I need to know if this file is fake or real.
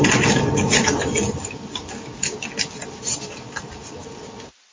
real